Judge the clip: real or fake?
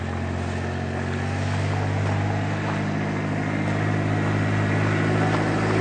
real